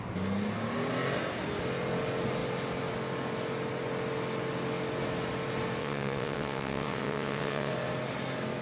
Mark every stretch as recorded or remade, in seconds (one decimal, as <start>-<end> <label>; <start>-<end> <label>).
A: 0.0-5.8 recorded; 5.8-7.7 remade; 7.7-8.6 recorded